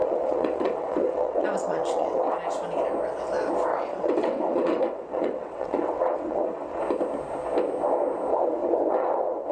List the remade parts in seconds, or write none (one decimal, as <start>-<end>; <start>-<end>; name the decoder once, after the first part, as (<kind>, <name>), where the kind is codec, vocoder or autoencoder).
0.0-2.3 (vocoder, WaveNeXt); 3.7-6.8; 8.3-9.5